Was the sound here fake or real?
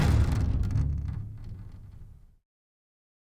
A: real